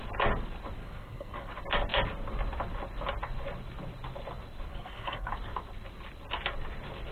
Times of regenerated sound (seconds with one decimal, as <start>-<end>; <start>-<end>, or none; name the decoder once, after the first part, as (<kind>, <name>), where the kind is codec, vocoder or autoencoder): 0.8-1.5 (codec, SNAC); 4.7-5.3